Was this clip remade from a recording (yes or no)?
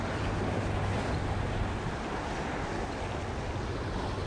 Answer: no